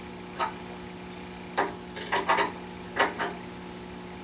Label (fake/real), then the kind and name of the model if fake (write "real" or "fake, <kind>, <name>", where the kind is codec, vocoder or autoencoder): real